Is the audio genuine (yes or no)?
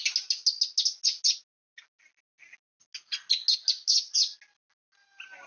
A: yes